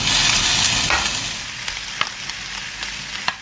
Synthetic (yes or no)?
no